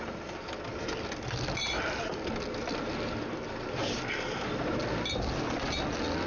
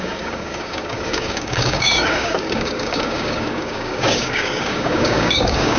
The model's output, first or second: second